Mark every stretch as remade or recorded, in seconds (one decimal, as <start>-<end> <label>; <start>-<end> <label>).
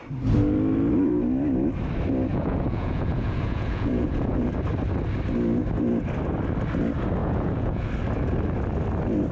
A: 0.0-2.3 recorded; 2.3-4.5 remade; 4.5-7.2 recorded; 7.2-7.9 remade; 7.9-9.3 recorded